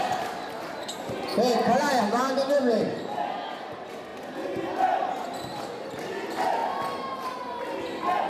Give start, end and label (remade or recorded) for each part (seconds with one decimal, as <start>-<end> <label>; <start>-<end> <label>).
0.0-8.3 recorded